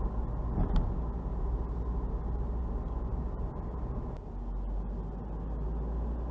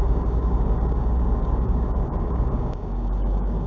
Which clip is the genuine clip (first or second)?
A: first